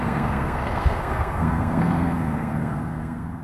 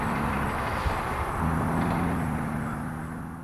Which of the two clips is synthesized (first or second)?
first